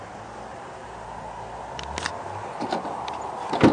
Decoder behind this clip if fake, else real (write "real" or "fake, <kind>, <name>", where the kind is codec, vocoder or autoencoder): real